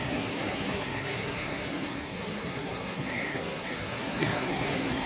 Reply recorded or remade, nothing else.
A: remade